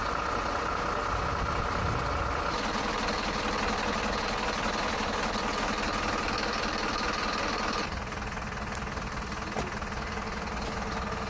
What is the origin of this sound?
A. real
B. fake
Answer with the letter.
A